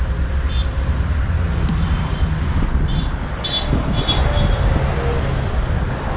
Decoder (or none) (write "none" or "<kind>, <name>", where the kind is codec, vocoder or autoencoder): vocoder, BigVGAN v2